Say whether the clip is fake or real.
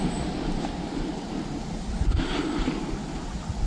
real